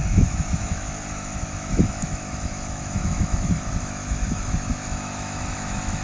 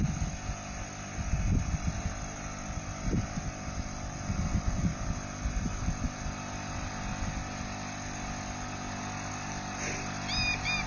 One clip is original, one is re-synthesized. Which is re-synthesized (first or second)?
first